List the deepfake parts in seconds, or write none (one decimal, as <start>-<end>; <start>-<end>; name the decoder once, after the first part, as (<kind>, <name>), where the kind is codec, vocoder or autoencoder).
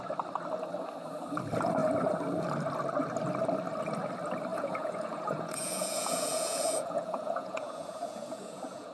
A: 4.5-8.9 (vocoder, Vocos)